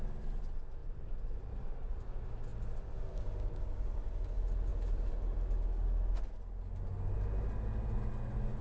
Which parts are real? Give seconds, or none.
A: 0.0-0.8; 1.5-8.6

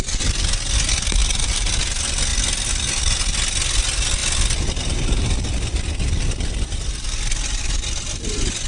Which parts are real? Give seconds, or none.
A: 0.0-1.2; 1.7-8.7

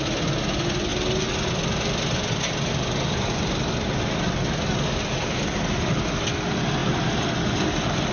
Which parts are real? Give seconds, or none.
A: 0.0-8.1

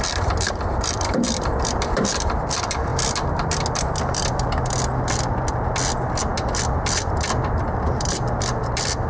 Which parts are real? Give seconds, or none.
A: 2.9-7.1

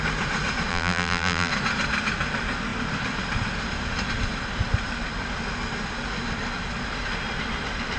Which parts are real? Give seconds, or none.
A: 0.0-0.7; 1.5-8.0

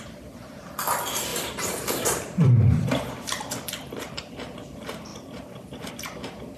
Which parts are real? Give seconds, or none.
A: 0.0-1.3; 4.2-5.1; 5.9-6.6

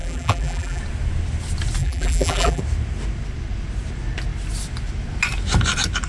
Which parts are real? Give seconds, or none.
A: 0.8-1.8; 2.6-6.1

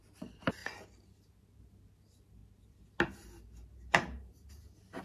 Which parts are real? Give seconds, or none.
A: 0.0-5.0